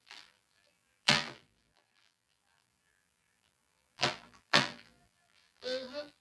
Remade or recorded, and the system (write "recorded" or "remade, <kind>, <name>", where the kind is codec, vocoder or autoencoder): remade, vocoder, BigVGAN v2